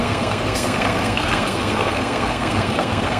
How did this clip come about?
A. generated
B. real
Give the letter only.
A